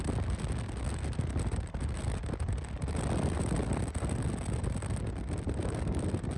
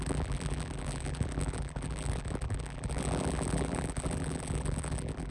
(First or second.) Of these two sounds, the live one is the first